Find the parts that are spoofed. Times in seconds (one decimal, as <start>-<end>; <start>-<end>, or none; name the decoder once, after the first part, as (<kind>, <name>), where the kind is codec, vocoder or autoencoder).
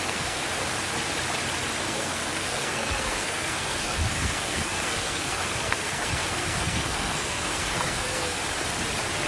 0.0-0.4 (codec, SNAC); 1.8-8.4